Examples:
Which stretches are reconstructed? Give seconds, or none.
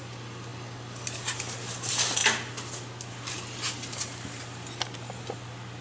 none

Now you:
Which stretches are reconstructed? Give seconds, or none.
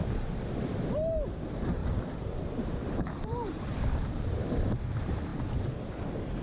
1.8-4.5 (vocoder, BigVGAN v2)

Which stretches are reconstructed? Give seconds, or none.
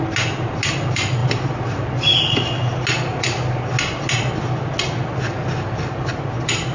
none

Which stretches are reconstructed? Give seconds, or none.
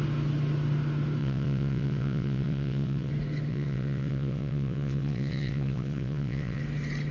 1.2-3.1 (vocoder, WaveNeXt); 3.5-6.6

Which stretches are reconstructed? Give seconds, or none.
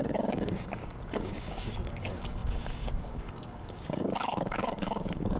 0.0-5.4 (codec, DAC)